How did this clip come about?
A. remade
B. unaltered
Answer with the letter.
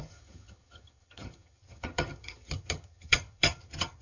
A